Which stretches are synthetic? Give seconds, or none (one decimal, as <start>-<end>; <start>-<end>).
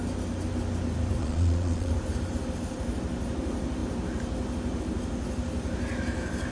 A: 1.2-1.9